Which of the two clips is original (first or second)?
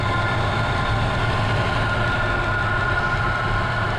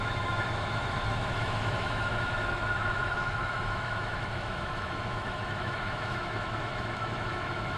first